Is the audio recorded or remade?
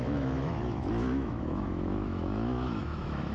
remade